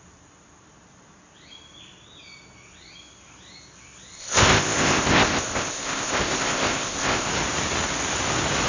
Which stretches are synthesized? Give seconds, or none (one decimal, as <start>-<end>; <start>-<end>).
4.2-7.3